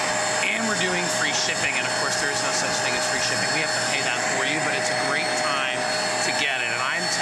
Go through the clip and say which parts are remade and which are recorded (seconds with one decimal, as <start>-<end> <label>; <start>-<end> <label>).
0.0-7.2 recorded